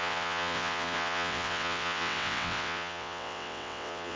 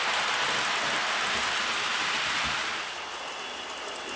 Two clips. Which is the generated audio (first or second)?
first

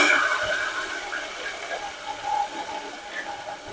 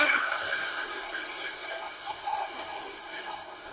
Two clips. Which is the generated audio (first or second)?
second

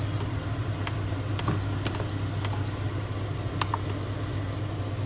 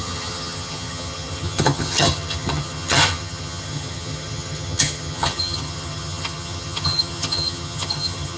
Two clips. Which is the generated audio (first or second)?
second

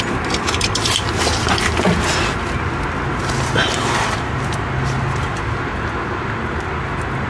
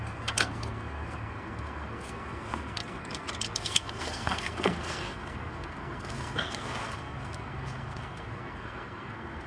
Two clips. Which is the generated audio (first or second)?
second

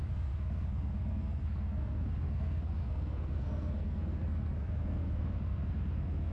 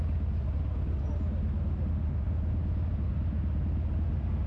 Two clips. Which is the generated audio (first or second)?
first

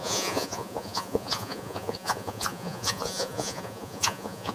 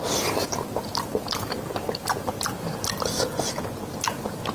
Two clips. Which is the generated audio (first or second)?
first